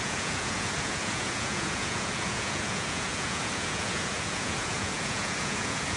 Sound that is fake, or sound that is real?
fake